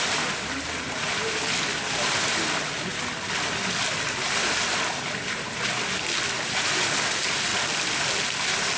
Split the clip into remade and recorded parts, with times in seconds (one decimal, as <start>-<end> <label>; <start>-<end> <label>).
0.0-8.8 recorded